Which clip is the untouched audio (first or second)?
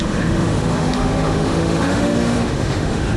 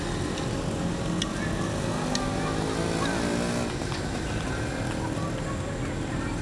second